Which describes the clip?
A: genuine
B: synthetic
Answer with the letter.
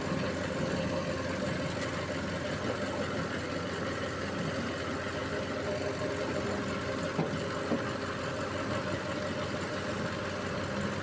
A